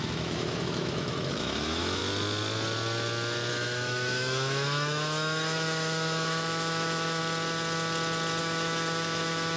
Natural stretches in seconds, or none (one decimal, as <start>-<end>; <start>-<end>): 2.0-3.5; 7.2-8.4